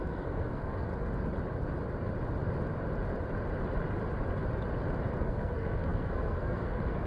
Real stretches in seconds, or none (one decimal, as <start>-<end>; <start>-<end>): 0.9-5.2